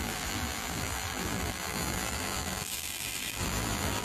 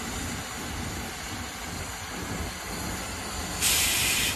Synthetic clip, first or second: first